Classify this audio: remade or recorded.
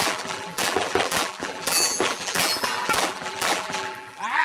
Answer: remade